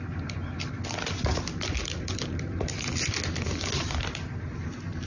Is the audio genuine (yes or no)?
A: yes